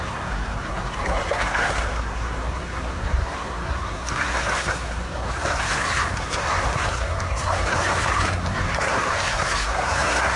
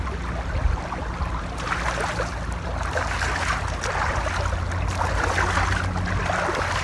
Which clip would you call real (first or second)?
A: second